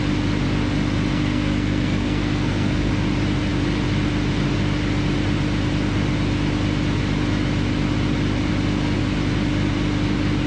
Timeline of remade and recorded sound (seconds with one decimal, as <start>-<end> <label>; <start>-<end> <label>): 0.0-1.1 recorded; 1.1-2.9 remade; 2.9-10.5 recorded